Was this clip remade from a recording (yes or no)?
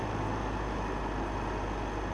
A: no